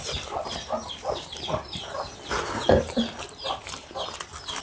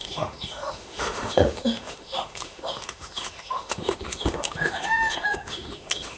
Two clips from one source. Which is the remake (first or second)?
second